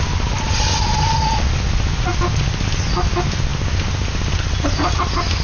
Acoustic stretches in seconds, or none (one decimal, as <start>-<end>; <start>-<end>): 0.0-5.4